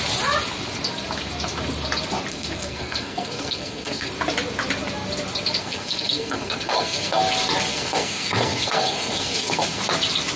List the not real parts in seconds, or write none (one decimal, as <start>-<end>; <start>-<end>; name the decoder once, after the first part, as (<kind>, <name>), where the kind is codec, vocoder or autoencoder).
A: 2.3-4.1 (codec, SNAC); 5.6-7.2; 7.7-9.8